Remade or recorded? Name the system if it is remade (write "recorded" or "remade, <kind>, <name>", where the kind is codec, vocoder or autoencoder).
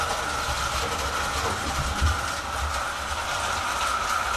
recorded